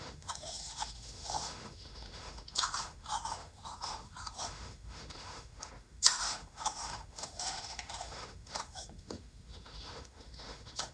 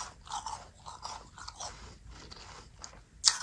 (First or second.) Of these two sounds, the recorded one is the second